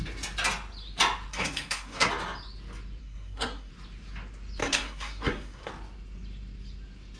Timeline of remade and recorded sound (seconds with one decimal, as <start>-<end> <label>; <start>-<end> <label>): 0.0-1.3 recorded; 1.3-2.1 remade; 2.1-3.0 recorded; 3.0-3.7 remade; 3.7-4.6 recorded; 4.6-5.7 remade; 5.7-7.2 recorded